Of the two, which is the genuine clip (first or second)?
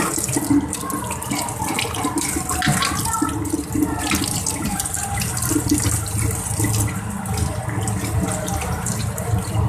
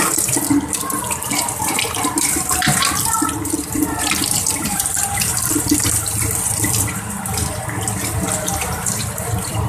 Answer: first